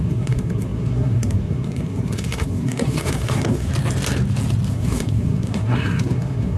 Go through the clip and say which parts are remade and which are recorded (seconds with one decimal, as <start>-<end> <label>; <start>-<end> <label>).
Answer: 0.0-3.7 remade; 3.7-4.7 recorded; 4.7-6.6 remade

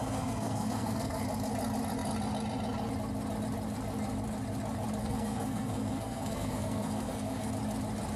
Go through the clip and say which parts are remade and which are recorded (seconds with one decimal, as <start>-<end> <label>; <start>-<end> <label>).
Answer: 0.0-1.2 remade; 1.2-5.0 recorded; 5.0-7.5 remade; 7.5-8.2 recorded

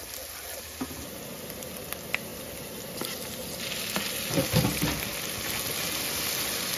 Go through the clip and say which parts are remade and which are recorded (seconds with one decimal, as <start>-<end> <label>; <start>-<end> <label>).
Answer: 0.0-6.8 recorded

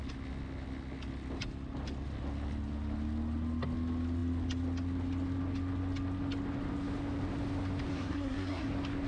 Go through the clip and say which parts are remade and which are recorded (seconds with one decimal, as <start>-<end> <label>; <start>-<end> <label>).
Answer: 0.0-7.9 recorded; 7.9-8.7 remade; 8.7-9.1 recorded